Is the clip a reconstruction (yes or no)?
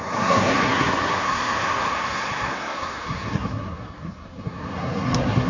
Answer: yes